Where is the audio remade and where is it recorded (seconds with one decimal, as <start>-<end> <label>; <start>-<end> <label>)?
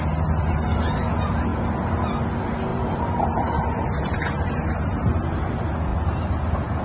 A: 0.0-2.7 recorded; 2.7-5.5 remade; 5.5-5.9 recorded; 5.9-6.8 remade